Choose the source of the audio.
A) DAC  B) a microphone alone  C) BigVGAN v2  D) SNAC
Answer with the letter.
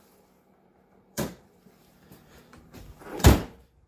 C